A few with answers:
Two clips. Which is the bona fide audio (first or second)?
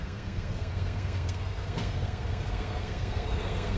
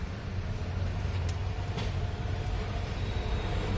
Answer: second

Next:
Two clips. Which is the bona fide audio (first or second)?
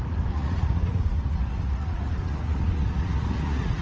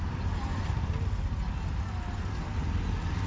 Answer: second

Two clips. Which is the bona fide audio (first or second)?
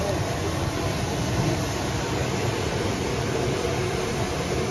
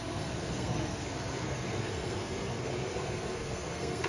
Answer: first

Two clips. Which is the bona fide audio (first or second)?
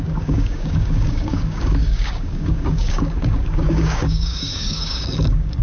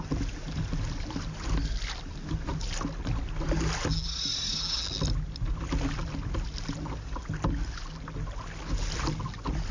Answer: second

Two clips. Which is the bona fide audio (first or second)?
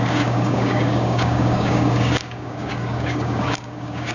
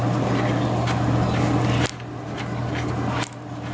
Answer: second